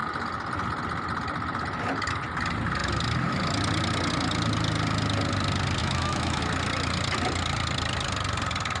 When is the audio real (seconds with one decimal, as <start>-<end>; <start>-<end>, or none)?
0.0-5.8; 6.4-8.8